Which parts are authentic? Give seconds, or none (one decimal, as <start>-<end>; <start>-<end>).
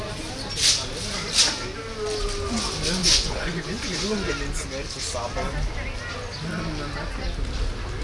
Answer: 0.0-3.0; 4.3-8.0